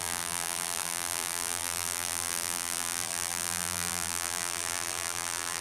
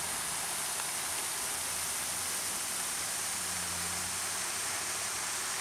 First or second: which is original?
second